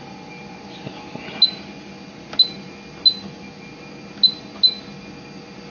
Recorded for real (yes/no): yes